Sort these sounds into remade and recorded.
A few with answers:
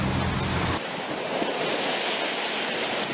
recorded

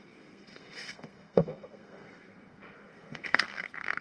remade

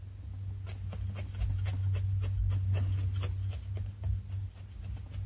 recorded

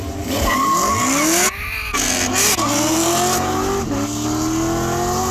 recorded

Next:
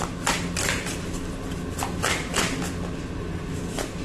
recorded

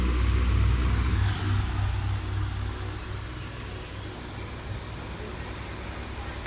recorded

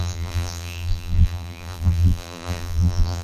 remade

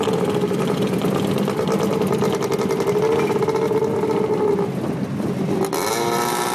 recorded